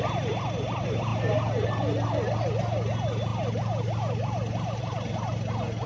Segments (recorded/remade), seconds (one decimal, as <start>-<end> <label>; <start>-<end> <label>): 0.0-5.9 recorded

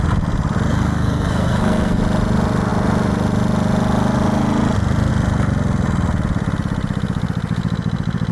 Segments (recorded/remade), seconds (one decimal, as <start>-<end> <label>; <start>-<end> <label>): 0.0-0.7 recorded; 0.7-2.0 remade; 2.0-8.3 recorded

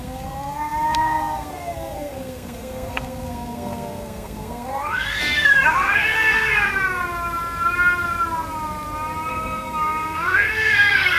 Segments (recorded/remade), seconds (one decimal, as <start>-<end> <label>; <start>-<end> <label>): 0.0-7.0 remade; 7.0-9.3 recorded; 9.3-11.2 remade

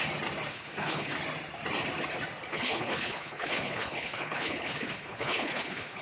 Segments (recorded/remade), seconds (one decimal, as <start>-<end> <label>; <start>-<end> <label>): 0.0-0.5 recorded; 0.5-1.1 remade; 1.1-2.5 recorded; 2.5-6.0 remade

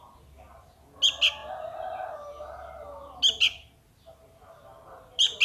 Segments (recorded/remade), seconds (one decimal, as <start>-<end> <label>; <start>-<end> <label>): 0.0-5.4 recorded